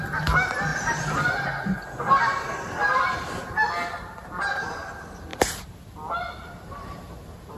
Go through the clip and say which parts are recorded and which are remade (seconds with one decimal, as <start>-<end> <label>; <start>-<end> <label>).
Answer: 0.0-0.7 recorded; 0.7-1.3 remade; 1.3-7.6 recorded